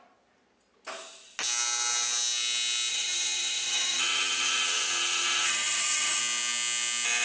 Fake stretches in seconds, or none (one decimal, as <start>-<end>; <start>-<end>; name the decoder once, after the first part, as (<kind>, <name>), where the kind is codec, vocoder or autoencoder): 2.9-6.2 (vocoder, HiFi-GAN)